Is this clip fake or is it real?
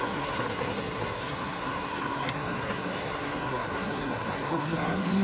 fake